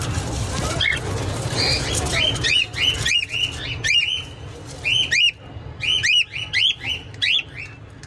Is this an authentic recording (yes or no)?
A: yes